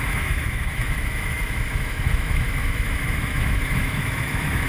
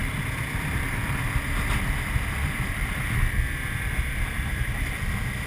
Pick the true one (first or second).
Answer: second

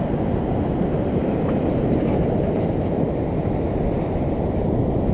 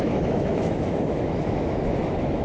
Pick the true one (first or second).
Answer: first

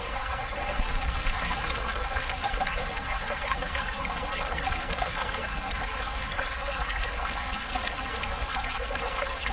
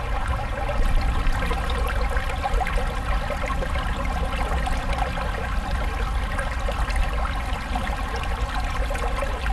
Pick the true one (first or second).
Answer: second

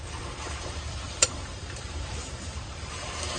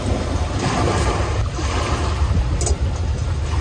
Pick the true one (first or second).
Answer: second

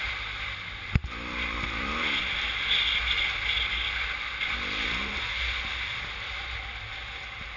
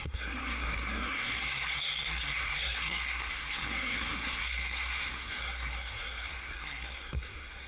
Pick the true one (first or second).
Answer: first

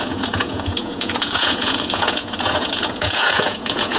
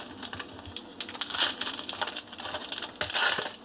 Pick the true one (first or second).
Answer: second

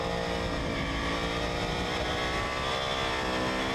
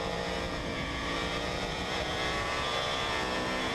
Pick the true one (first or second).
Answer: first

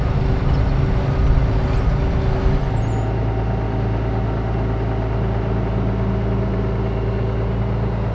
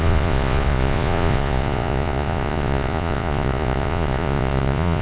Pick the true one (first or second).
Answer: first